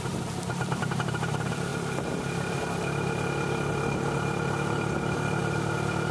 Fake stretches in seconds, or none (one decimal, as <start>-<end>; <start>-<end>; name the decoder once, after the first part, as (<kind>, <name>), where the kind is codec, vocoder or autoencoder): none